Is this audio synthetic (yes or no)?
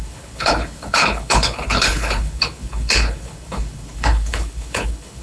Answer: yes